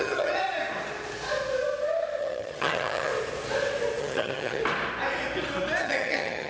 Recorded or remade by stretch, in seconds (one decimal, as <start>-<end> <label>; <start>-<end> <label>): 0.0-0.4 remade; 0.4-2.2 recorded; 2.2-3.1 remade; 3.1-4.0 recorded; 4.0-4.6 remade; 4.6-5.8 recorded; 5.8-6.5 remade